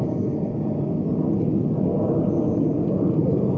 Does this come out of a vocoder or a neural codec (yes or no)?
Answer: no